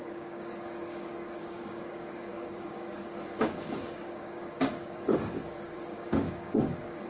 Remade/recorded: remade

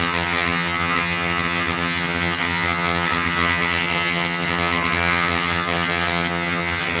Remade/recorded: remade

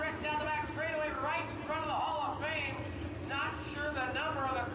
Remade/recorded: recorded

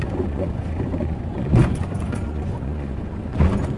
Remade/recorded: remade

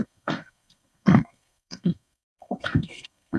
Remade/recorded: remade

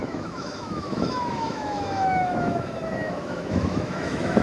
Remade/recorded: remade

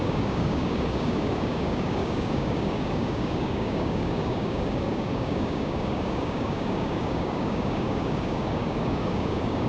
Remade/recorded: remade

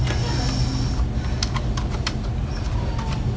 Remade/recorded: recorded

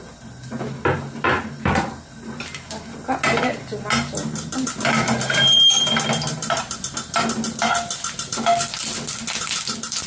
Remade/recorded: recorded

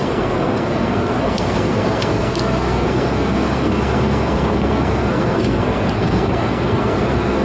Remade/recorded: remade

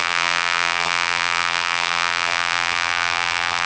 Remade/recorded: remade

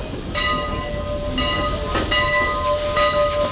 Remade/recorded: recorded